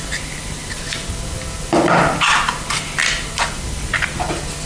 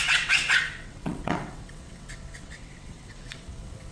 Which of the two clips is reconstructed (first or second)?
second